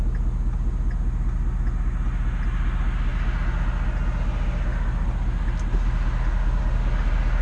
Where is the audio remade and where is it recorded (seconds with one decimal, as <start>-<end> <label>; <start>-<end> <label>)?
0.0-7.4 recorded